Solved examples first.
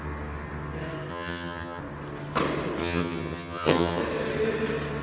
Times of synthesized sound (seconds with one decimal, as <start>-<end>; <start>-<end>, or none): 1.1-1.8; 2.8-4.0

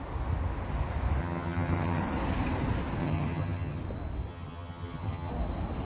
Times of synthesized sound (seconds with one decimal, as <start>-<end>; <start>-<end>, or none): 1.2-2.0; 3.0-3.8; 4.3-5.3

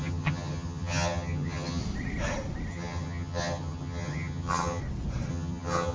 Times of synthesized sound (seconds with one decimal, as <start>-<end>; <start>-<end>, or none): 0.0-1.8; 2.7-4.8; 5.3-5.9

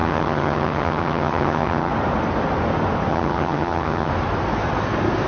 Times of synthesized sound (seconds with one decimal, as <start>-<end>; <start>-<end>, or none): 0.0-1.9; 3.1-4.1

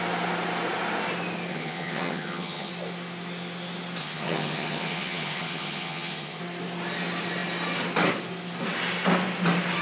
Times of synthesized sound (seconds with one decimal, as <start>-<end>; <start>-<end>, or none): 1.5-2.7; 4.0-6.4

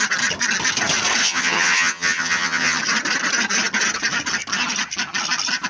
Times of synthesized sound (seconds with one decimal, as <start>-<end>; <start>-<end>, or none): 1.2-2.8

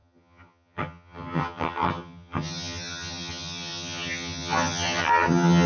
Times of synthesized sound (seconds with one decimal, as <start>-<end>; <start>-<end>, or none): 0.0-5.7